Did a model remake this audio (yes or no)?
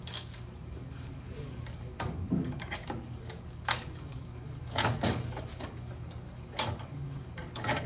yes